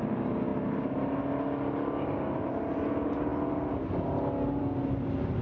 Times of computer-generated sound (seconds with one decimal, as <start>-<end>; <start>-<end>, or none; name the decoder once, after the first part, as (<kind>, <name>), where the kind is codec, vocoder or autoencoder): none